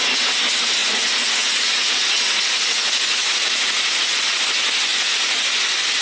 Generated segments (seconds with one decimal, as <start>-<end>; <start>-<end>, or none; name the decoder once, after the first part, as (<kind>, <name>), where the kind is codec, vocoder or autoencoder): 0.8-4.4 (vocoder, Vocos); 4.9-5.4